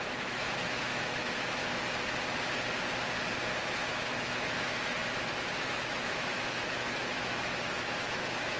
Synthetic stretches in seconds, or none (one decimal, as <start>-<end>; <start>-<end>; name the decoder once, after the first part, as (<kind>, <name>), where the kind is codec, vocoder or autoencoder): 0.0-1.6 (autoencoder, DAC-VAE); 3.6-8.6